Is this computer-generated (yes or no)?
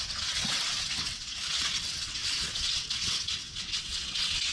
yes